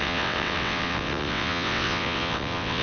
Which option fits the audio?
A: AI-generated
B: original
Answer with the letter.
A